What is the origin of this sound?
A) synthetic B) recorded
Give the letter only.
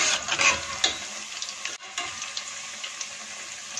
B